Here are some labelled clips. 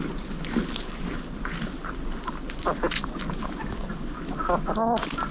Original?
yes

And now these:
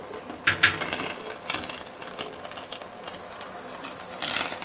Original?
yes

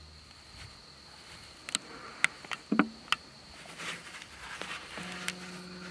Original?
yes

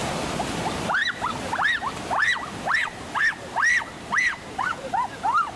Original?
yes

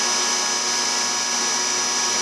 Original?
yes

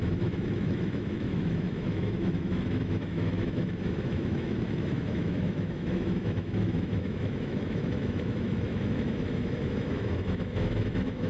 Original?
no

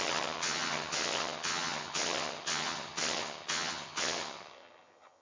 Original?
no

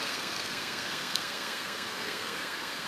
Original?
no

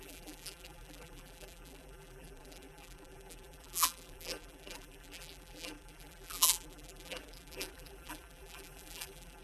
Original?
no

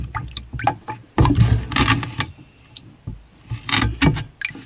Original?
yes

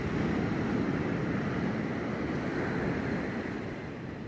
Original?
yes